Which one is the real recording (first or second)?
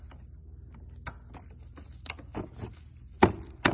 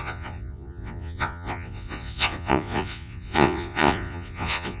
first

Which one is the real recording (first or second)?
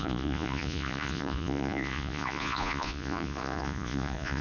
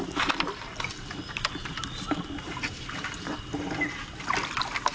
second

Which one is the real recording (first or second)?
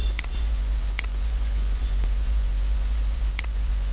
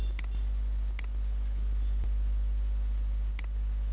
second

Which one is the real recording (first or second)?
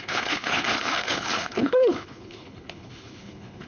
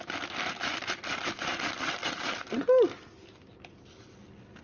second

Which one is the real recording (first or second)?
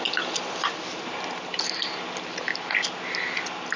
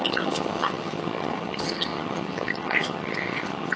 first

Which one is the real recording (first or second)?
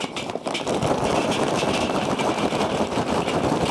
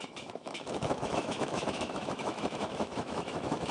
first